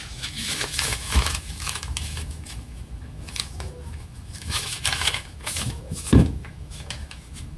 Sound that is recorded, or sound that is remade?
remade